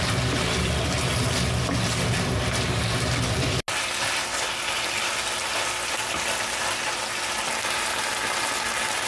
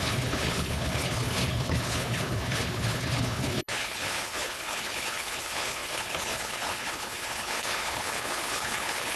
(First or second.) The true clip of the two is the first